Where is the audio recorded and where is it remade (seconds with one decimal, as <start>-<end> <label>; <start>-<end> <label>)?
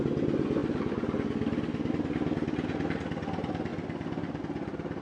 0.0-5.0 recorded